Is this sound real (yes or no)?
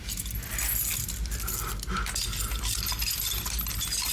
yes